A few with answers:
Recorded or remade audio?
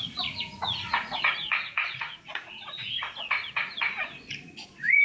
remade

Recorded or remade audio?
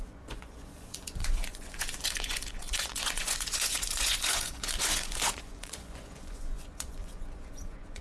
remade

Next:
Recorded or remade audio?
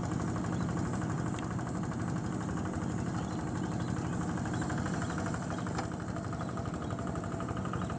recorded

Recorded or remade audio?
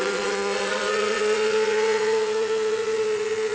remade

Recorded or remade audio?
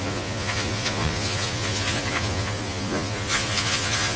remade